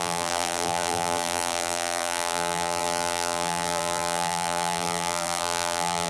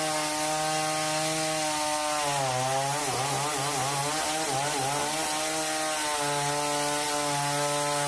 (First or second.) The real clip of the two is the second